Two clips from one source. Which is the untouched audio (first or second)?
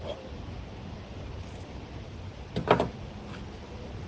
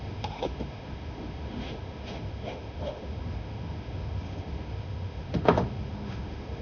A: first